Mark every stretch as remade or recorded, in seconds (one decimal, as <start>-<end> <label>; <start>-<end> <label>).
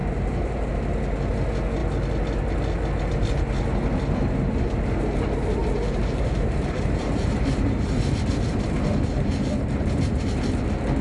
0.0-0.7 remade; 0.7-5.6 recorded; 5.6-10.5 remade; 10.5-11.0 recorded